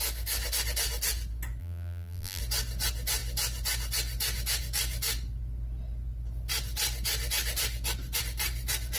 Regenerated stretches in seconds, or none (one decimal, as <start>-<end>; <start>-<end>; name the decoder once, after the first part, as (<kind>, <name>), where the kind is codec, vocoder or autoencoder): 1.6-2.4 (vocoder, BigVGAN v2)